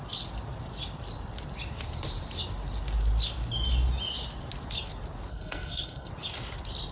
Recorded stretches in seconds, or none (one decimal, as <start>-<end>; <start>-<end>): 0.0-5.3; 6.1-6.9